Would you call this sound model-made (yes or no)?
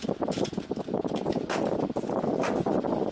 no